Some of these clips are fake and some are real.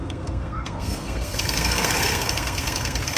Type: fake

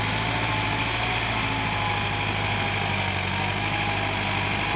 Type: real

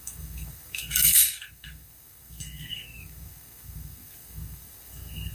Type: fake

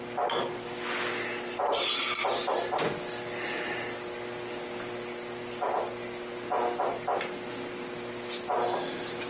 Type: real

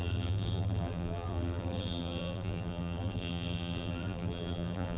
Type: fake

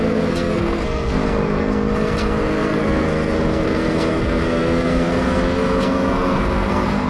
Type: fake